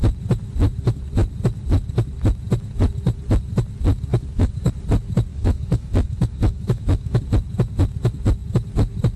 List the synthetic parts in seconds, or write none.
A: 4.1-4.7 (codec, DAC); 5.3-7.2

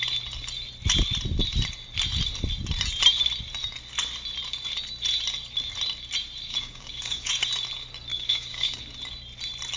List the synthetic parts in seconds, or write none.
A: 6.5-7.3 (codec, DAC); 8.1-8.8

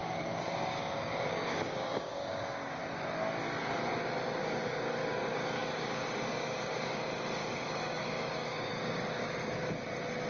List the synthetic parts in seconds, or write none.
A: 0.0-2.8 (codec, DAC); 4.4-9.2